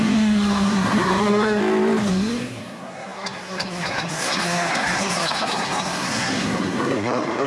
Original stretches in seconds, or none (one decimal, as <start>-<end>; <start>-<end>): 1.6-2.1